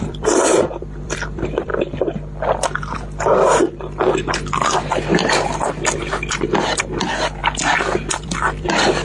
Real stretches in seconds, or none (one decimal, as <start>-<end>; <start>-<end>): 1.7-6.8; 7.4-8.1